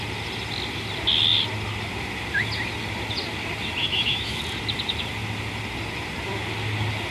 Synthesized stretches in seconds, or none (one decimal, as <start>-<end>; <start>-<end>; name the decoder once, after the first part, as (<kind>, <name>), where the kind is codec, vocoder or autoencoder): 3.9-4.4 (autoencoder, DAC-VAE)